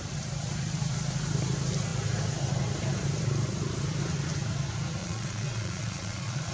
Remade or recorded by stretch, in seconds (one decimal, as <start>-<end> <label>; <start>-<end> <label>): 0.0-5.0 recorded; 5.0-6.5 remade

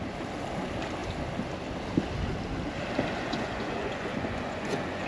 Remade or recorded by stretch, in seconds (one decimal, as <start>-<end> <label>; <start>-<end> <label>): 0.0-3.1 recorded; 3.1-5.1 remade